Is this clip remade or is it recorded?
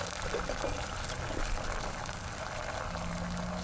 recorded